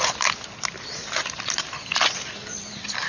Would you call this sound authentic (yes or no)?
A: yes